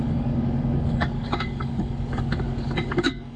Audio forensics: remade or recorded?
remade